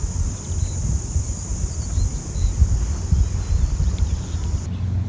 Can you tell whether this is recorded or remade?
recorded